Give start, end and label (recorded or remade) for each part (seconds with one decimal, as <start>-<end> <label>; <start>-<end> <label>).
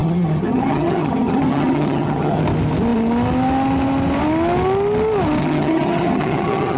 0.0-2.4 remade; 2.4-5.4 recorded; 5.4-6.8 remade